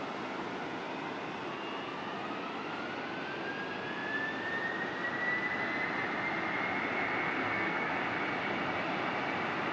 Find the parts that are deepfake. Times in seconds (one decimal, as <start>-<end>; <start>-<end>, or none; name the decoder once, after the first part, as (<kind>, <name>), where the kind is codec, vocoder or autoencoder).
7.4-7.9 (codec, SNAC)